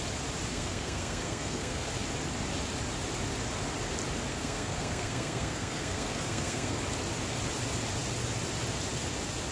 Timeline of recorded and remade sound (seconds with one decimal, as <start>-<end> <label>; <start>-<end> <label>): 0.0-0.5 recorded; 0.5-1.9 remade; 1.9-4.3 recorded; 4.3-6.8 remade; 6.8-9.5 recorded